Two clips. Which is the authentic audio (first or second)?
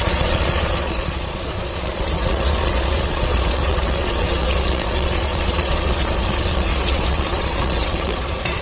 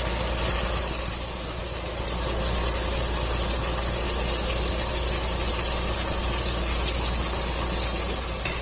second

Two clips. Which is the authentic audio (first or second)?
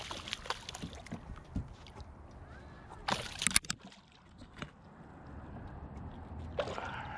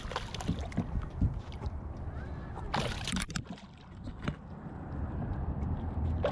first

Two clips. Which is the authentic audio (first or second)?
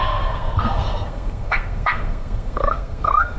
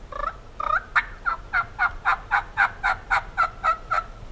second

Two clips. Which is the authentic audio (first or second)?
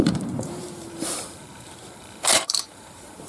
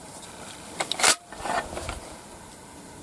second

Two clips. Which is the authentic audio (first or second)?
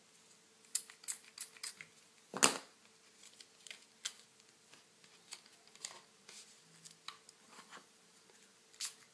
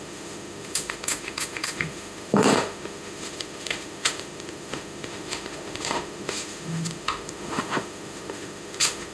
first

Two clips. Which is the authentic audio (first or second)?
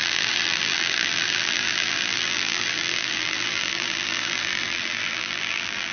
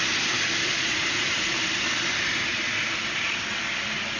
second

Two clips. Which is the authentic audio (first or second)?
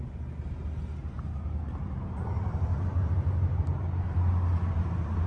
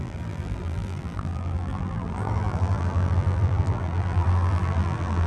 first